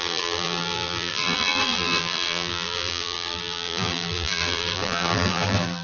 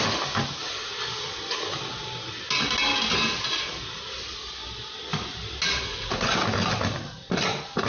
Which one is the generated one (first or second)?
first